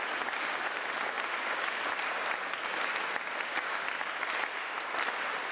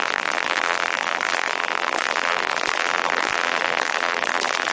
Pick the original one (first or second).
first